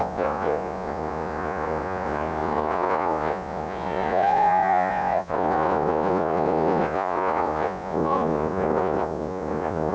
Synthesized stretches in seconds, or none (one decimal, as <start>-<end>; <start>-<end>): 0.0-9.9